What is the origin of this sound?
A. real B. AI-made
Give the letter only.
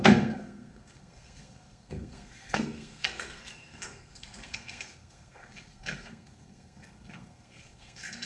B